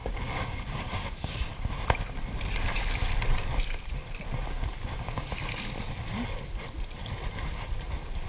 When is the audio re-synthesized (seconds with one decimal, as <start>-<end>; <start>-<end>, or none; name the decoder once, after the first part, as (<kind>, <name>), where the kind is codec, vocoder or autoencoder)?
0.0-1.5 (codec, DAC); 4.8-5.3